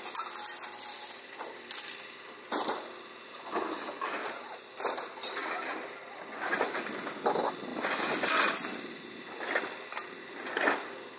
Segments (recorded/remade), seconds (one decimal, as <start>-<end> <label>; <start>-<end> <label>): 0.0-4.2 recorded; 4.2-4.7 remade; 4.7-11.2 recorded